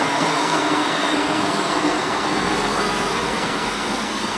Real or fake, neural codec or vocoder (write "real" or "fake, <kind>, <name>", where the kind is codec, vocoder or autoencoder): fake, codec, SNAC